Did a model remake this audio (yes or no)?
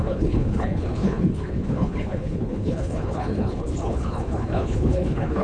yes